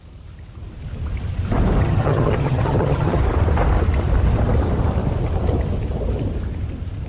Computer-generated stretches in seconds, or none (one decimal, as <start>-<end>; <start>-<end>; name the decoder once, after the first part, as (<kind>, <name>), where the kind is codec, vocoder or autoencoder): 1.8-3.2 (vocoder, HiFi-GAN)